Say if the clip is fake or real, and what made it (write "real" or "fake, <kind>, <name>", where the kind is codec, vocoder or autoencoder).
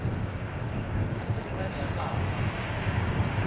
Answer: fake, codec, DAC